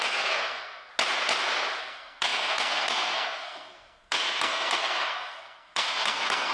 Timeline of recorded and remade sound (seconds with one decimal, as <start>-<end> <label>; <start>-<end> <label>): 0.0-0.9 remade; 0.9-1.8 recorded; 1.8-6.5 remade